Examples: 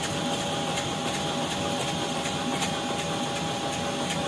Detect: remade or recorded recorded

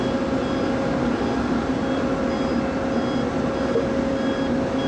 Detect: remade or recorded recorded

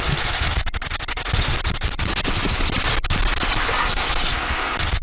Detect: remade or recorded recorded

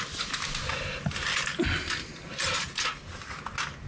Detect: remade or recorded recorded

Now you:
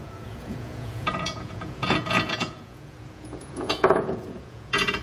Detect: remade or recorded remade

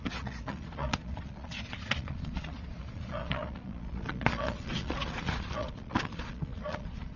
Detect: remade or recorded remade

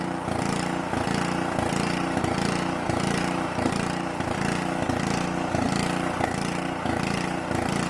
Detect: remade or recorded recorded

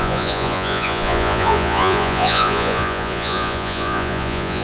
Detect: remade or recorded remade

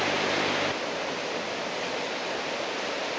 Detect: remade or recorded recorded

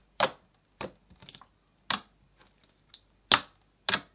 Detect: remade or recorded recorded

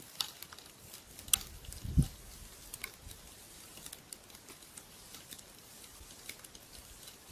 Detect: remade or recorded recorded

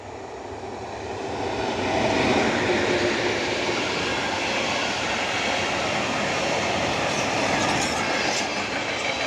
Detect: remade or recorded recorded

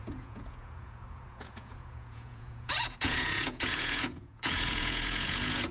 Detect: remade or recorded remade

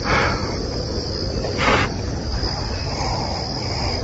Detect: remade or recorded recorded